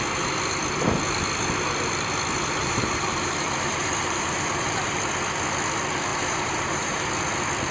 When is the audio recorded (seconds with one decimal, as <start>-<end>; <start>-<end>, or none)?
0.0-2.6; 5.0-6.1; 7.1-7.7